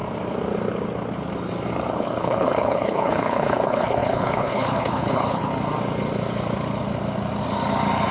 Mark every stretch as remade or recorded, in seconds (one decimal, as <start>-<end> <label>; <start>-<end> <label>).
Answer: 0.0-2.0 recorded; 2.0-5.5 remade; 5.5-8.1 recorded